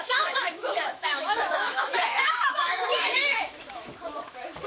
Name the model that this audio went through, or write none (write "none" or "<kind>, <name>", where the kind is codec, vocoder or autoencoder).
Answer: autoencoder, DAC-VAE